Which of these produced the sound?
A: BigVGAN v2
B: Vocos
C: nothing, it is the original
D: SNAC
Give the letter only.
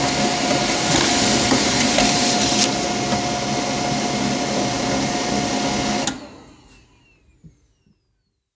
C